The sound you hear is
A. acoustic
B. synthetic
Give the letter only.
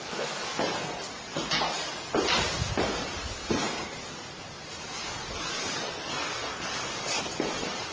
B